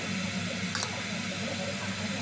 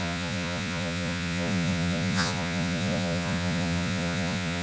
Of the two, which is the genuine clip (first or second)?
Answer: first